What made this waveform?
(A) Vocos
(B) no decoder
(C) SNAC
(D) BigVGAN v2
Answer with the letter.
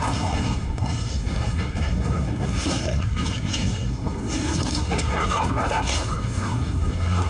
C